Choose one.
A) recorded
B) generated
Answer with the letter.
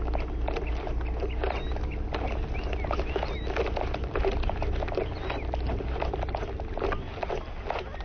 A